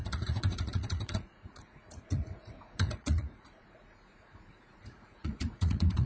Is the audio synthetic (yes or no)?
yes